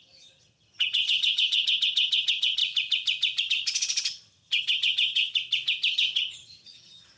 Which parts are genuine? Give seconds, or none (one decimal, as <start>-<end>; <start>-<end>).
2.6-3.4; 5.3-5.9